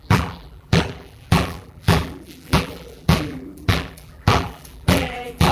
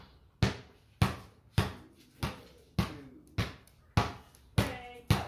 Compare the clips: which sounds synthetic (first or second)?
first